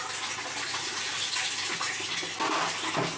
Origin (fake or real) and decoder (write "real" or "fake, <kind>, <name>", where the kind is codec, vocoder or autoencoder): real